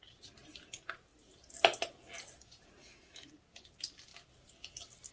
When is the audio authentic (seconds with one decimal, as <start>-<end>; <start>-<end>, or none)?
0.0-2.8; 3.3-5.1